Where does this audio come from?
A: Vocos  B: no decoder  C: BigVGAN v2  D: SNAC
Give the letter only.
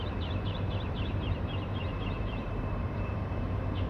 C